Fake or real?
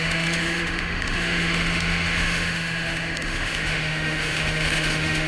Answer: fake